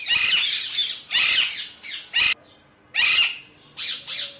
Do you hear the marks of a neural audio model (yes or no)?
no